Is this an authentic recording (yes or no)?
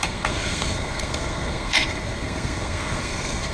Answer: no